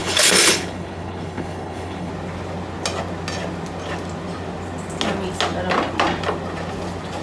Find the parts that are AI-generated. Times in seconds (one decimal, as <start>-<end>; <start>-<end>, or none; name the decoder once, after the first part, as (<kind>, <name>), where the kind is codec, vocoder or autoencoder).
0.0-2.1 (codec, HILCodec)